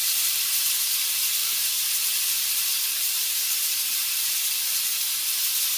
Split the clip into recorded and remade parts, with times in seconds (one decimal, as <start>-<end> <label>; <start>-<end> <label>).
0.0-0.5 remade; 0.5-1.4 recorded; 1.4-4.9 remade; 4.9-5.8 recorded